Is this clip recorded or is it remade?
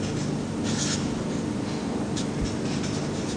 recorded